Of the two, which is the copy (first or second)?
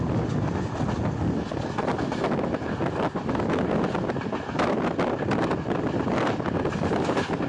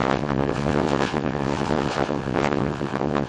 second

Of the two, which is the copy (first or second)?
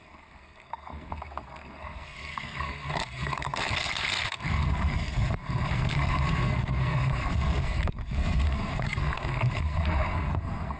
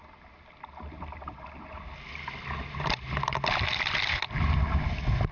first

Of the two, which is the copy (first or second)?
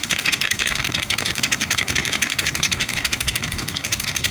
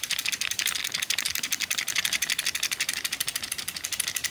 first